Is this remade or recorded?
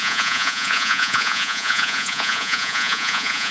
remade